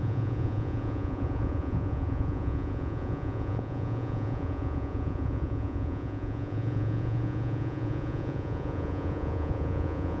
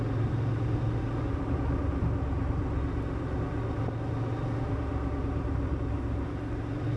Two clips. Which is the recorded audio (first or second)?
second